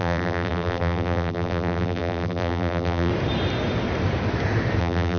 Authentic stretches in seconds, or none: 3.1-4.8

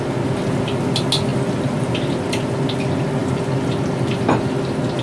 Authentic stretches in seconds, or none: 0.0-1.3; 2.1-3.2

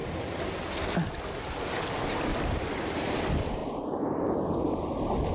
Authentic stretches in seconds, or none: 0.5-2.3; 3.1-5.3

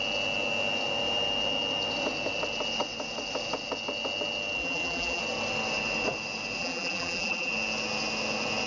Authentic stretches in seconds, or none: 0.0-4.6; 5.2-6.6; 7.5-8.7

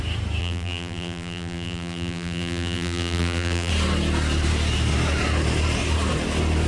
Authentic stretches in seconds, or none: 0.0-0.4; 3.7-6.7

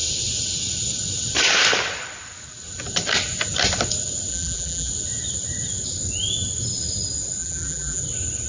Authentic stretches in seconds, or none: 0.0-4.3; 4.9-7.4; 8.0-8.5

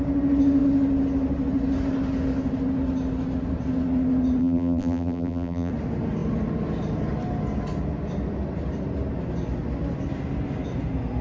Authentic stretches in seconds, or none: 0.0-4.4; 5.7-11.2

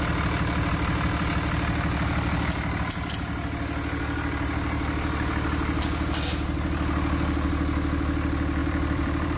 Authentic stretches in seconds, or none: 0.0-8.6